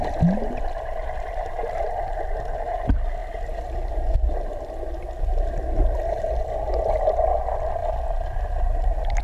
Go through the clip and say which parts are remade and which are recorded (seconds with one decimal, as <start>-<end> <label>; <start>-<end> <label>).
0.0-9.2 recorded

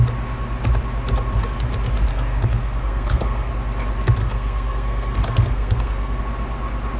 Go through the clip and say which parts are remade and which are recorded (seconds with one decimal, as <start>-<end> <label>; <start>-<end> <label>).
0.0-2.1 recorded; 2.1-3.5 remade; 3.5-4.2 recorded; 4.2-6.2 remade; 6.2-7.0 recorded

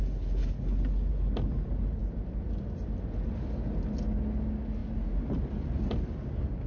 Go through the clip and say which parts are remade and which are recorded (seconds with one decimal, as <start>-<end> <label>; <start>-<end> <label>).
0.0-2.0 recorded; 2.0-3.0 remade; 3.0-4.8 recorded; 4.8-6.7 remade

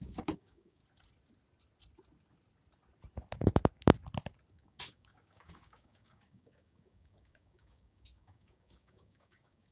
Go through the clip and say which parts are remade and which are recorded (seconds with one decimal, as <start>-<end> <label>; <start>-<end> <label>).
0.0-0.8 remade; 0.8-4.5 recorded; 4.5-9.7 remade

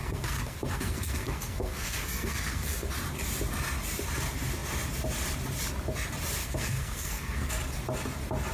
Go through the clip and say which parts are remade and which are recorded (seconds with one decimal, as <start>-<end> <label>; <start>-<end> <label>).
0.0-2.9 remade; 2.9-6.4 recorded; 6.4-7.5 remade; 7.5-8.5 recorded

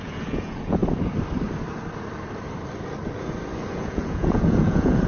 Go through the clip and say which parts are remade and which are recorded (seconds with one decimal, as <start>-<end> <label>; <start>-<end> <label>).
0.0-0.8 remade; 0.8-3.7 recorded; 3.7-5.1 remade

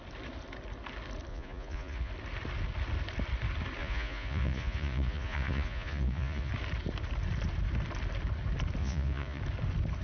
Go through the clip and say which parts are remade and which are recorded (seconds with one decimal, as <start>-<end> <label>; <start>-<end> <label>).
0.0-1.3 recorded; 1.3-2.1 remade; 2.1-3.8 recorded; 3.8-6.5 remade; 6.5-8.8 recorded; 8.8-9.4 remade; 9.4-10.0 recorded

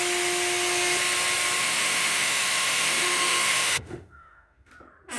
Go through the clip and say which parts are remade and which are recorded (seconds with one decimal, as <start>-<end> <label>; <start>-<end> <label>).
0.0-1.6 recorded; 1.6-4.7 remade; 4.7-5.2 recorded